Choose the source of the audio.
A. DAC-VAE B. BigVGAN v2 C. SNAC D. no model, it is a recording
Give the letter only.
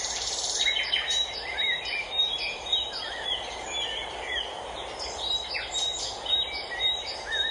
B